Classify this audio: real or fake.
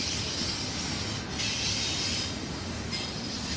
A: real